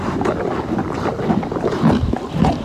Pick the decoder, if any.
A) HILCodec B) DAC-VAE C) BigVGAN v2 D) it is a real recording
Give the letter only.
D